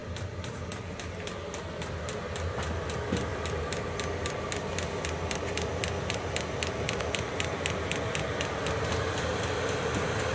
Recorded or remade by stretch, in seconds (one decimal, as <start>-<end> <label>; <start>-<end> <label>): 0.0-10.3 recorded